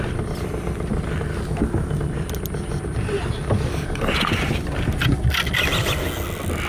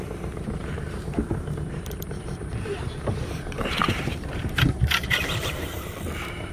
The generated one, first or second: second